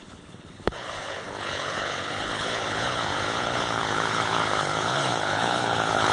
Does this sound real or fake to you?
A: fake